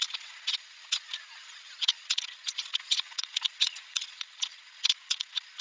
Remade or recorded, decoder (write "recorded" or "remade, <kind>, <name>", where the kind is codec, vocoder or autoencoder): remade, vocoder, Vocos